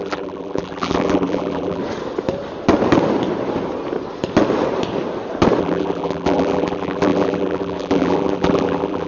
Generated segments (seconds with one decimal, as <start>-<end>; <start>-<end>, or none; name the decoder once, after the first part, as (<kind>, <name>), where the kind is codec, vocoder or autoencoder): 0.0-1.8 (vocoder, BigVGAN v2); 5.6-9.1